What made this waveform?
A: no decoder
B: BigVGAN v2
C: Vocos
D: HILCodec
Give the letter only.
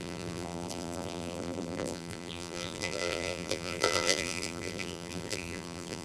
B